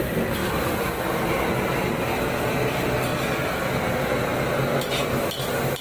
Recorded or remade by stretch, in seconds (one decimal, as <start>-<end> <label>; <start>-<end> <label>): 0.0-5.8 recorded